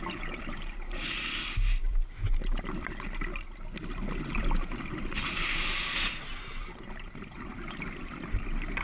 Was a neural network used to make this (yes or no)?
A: no